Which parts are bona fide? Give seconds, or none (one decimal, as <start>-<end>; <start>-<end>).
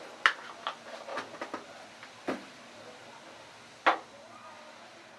0.0-1.1; 3.7-5.2